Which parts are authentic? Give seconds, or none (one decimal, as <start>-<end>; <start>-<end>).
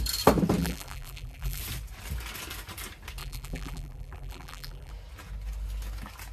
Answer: 0.0-0.6; 1.6-3.2; 4.9-6.3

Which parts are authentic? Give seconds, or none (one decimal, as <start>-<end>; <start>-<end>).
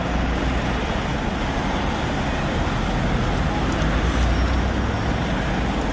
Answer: 0.0-5.9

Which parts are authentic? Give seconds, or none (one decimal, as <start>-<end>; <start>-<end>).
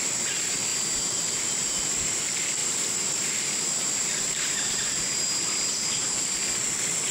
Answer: 0.0-0.7; 1.7-2.6; 6.4-7.1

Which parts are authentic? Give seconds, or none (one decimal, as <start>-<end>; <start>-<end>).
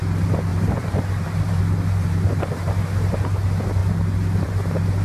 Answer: 0.0-0.5; 1.6-2.0; 2.7-5.0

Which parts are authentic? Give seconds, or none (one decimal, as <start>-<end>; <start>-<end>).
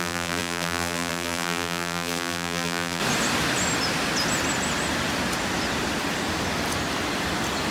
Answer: 3.0-7.7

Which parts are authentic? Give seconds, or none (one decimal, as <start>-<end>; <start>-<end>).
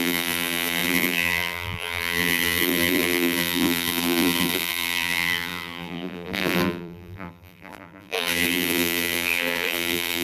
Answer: none